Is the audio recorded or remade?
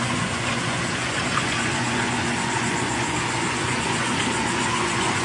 remade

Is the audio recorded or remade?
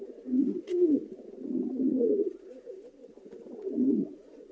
remade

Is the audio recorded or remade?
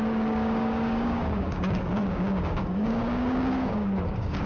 remade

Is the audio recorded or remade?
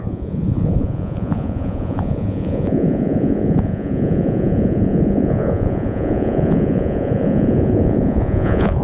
remade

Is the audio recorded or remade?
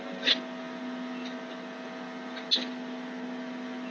recorded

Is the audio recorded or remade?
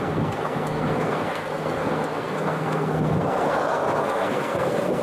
remade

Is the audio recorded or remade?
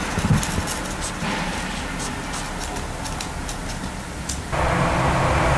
recorded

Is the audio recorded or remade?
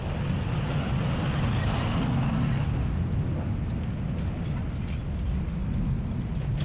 recorded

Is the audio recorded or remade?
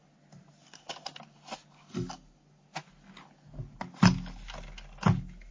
recorded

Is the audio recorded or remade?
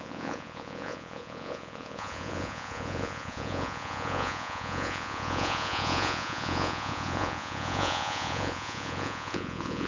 remade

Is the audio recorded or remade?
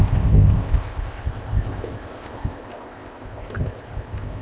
remade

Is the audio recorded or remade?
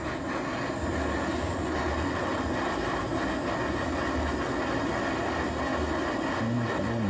recorded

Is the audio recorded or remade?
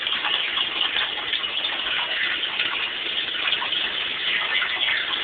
recorded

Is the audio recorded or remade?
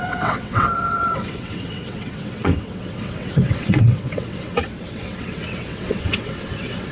remade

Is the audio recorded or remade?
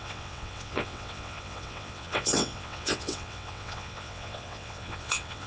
remade